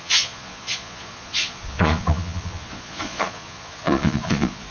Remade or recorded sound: remade